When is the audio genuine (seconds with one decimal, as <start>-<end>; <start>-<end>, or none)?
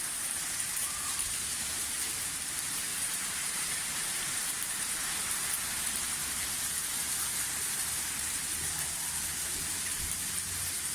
none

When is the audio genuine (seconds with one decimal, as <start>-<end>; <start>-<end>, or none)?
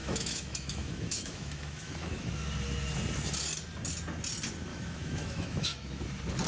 2.3-4.7; 6.0-6.5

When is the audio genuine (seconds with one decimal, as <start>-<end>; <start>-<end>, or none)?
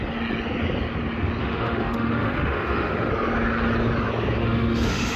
0.0-1.4; 3.1-4.4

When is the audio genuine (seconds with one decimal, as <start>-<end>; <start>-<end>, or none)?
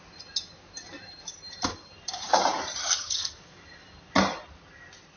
0.0-2.8; 3.4-5.2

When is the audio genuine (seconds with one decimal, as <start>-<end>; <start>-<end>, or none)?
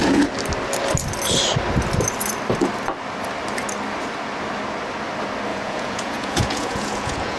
0.0-5.5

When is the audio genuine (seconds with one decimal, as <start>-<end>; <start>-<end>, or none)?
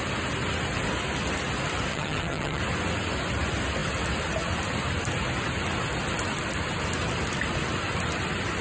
0.0-1.9; 2.6-8.6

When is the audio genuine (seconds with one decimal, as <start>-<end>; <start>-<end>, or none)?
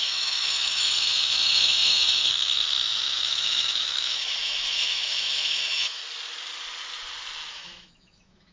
6.0-7.5